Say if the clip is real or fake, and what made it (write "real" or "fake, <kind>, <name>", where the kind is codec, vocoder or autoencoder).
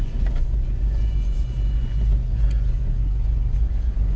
fake, vocoder, Vocos